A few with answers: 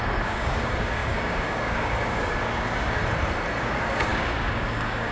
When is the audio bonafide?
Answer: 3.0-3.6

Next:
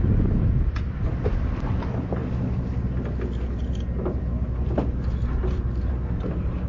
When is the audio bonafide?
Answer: 0.0-6.7

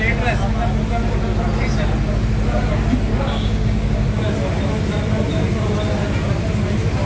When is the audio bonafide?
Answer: 0.0-3.1; 4.2-7.1

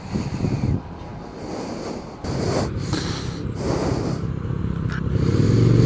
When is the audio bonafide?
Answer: 0.0-5.9

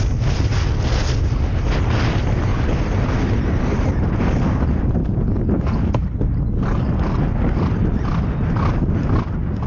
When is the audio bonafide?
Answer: 0.0-9.7

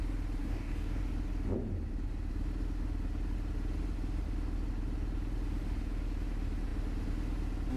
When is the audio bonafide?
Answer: 0.0-0.4; 1.0-7.8

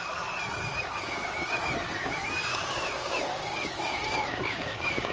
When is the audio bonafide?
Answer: 0.0-0.7; 1.6-2.0